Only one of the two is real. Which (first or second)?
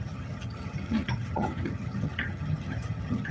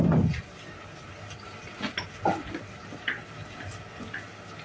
second